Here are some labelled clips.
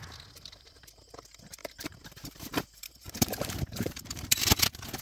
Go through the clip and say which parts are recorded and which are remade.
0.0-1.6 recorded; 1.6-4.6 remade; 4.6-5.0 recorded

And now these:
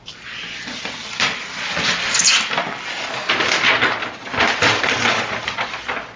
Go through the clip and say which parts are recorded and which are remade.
0.0-1.0 recorded; 1.0-1.6 remade; 1.6-6.2 recorded

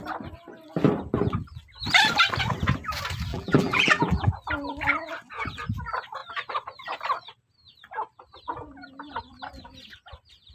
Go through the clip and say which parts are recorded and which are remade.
0.0-3.3 recorded; 3.3-4.3 remade; 4.3-10.5 recorded

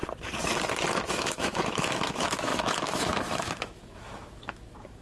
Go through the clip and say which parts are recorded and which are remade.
0.0-1.1 recorded; 1.1-5.0 remade

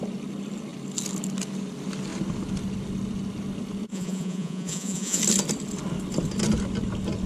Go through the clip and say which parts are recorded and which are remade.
0.0-3.9 recorded; 3.9-5.2 remade; 5.2-7.3 recorded